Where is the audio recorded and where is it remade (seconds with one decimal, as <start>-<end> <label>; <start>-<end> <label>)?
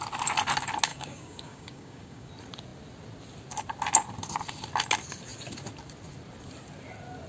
0.0-0.9 recorded; 0.9-2.3 remade; 2.3-7.3 recorded